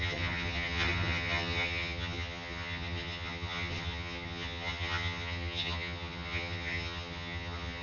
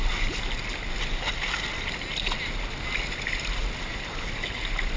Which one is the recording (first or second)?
second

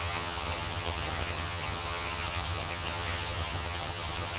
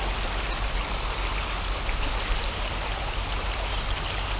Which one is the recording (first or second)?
second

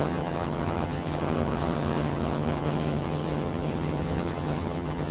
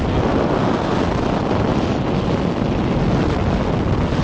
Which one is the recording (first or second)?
second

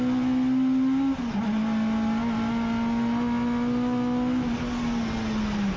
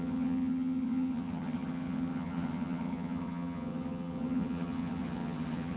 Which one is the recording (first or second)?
first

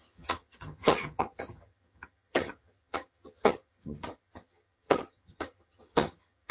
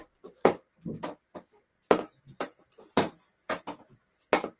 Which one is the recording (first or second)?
second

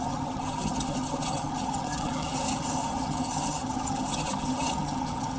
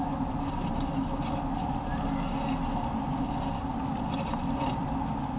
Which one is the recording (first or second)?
second